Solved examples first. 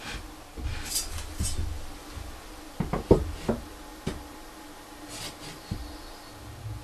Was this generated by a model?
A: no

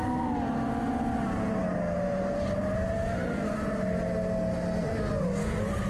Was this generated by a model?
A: no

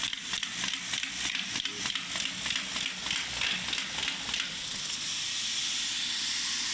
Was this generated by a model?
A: no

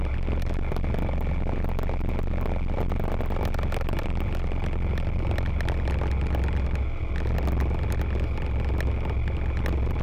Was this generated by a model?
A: no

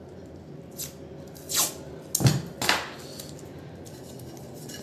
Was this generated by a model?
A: no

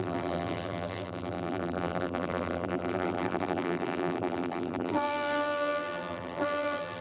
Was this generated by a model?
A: yes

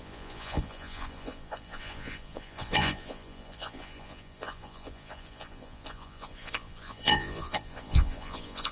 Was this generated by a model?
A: yes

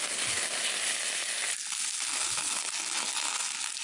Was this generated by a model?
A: no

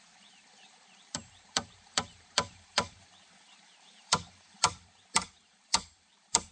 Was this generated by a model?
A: yes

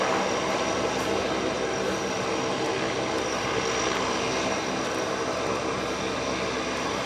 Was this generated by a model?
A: no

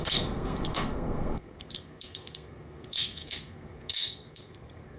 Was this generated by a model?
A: yes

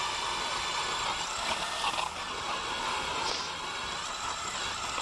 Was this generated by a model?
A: no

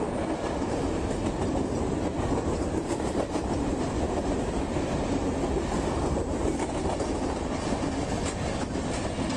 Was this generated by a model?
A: no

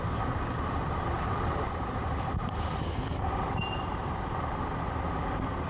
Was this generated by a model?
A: yes